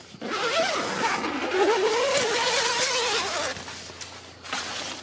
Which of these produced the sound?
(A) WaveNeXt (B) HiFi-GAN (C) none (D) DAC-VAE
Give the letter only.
C